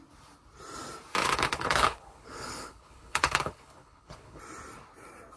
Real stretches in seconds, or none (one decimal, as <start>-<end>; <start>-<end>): 0.0-1.2; 4.4-5.4